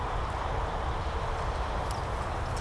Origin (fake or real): real